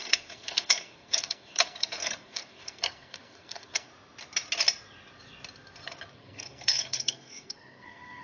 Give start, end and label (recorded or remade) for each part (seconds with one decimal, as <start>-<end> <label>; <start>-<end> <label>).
0.0-3.9 remade; 3.9-6.1 recorded; 6.1-8.2 remade